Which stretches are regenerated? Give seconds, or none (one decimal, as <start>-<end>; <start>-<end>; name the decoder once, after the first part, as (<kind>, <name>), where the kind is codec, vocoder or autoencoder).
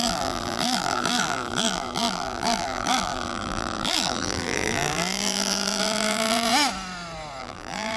0.0-6.5 (vocoder, BigVGAN v2); 7.4-8.0